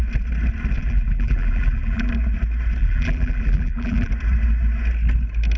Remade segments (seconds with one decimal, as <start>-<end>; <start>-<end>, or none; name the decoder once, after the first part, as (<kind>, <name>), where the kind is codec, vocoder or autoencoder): 0.8-2.1 (vocoder, BigVGAN v2); 2.8-4.1